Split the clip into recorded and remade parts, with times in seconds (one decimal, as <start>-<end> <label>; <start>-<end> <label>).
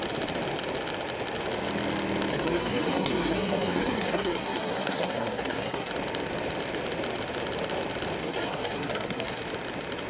0.0-2.3 recorded; 2.3-5.9 remade; 5.9-8.2 recorded; 8.2-9.4 remade; 9.4-10.1 recorded